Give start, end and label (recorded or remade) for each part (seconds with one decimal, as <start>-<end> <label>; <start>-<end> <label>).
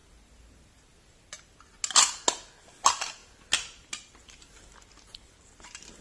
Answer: 0.0-6.0 recorded